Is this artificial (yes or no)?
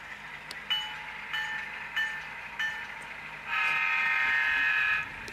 no